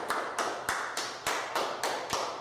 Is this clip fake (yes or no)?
no